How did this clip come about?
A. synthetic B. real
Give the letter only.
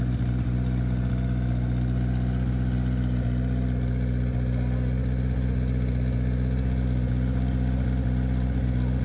B